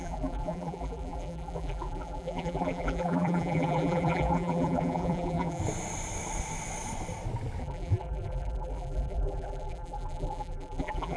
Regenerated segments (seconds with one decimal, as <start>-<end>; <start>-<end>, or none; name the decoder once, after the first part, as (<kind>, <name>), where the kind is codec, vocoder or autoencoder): 0.0-5.6 (vocoder, BigVGAN v2); 7.6-11.2